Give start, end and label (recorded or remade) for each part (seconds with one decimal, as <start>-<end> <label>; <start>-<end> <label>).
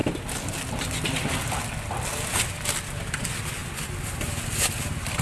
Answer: 0.0-3.6 remade; 3.6-5.2 recorded